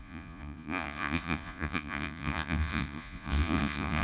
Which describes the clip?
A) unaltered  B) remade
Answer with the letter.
B